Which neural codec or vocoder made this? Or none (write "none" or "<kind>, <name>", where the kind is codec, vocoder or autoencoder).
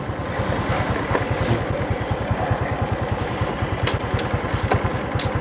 none